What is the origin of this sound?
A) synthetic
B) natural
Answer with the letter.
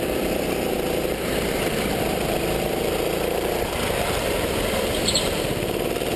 A